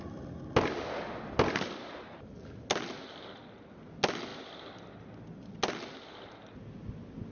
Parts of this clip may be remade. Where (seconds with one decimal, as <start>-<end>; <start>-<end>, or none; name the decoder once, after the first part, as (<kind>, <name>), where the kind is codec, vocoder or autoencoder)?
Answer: none